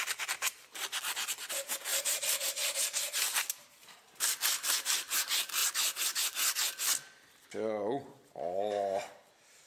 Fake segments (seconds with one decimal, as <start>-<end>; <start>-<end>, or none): 0.0-0.8; 1.5-5.6; 8.1-9.7